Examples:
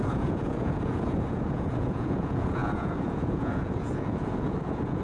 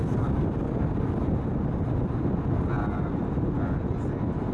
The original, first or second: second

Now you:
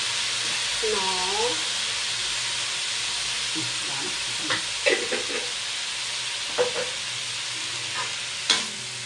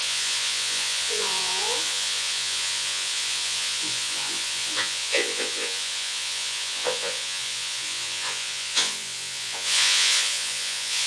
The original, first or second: first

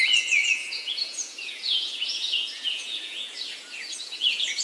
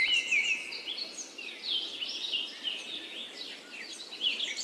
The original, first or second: second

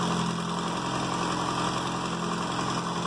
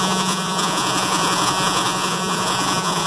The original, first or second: first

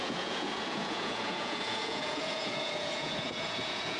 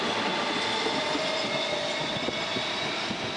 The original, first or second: second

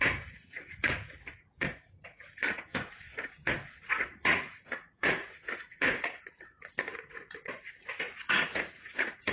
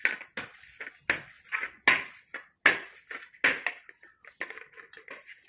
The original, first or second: second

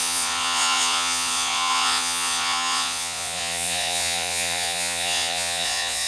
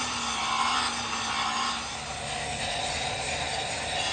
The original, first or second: second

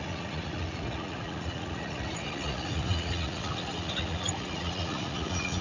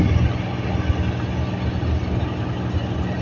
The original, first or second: second